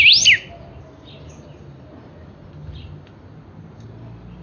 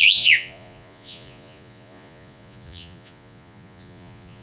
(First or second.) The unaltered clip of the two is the first